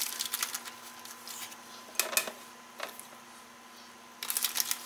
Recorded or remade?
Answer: recorded